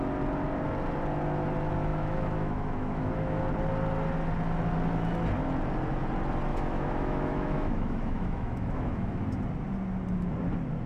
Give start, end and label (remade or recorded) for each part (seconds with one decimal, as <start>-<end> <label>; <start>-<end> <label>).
0.0-1.9 recorded; 1.9-3.4 remade; 3.4-6.5 recorded; 6.5-9.2 remade; 9.2-10.9 recorded